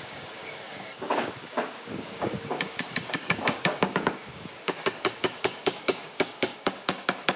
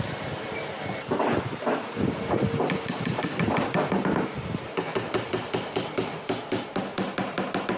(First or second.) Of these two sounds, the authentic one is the second